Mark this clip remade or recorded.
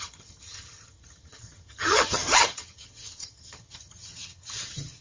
remade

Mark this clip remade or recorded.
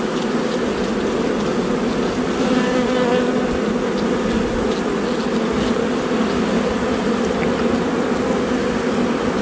recorded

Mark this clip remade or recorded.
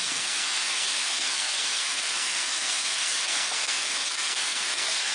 remade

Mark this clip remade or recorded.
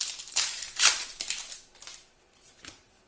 recorded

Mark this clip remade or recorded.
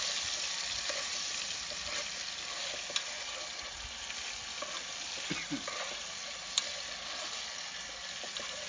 recorded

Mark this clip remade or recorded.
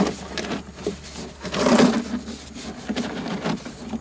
recorded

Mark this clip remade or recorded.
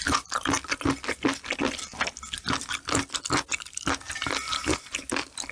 recorded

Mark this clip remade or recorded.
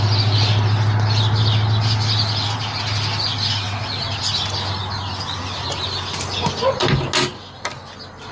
recorded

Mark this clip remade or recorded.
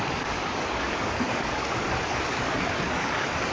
remade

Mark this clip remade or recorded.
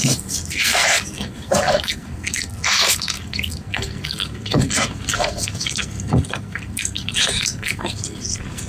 remade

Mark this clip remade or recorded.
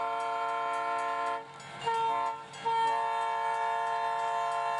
recorded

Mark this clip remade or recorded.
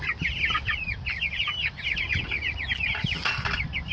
recorded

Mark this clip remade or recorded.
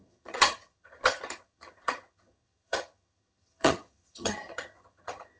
remade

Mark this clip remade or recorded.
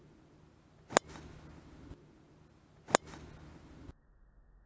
recorded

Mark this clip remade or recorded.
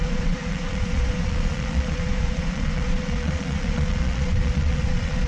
remade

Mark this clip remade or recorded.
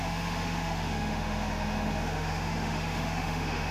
remade